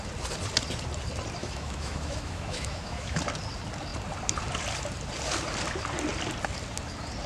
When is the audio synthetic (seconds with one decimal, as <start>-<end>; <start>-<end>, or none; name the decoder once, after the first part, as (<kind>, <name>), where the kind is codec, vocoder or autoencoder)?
1.4-3.2 (autoencoder, DAC-VAE)